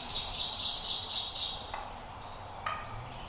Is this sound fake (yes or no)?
yes